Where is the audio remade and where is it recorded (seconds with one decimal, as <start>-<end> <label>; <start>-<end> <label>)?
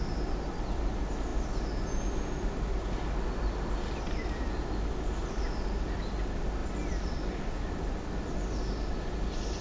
0.0-9.6 recorded